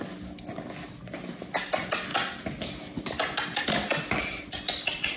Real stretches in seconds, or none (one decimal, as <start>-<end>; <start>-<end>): 0.0-5.2